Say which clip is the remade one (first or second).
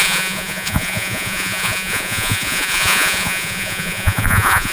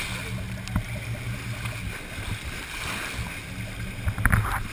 first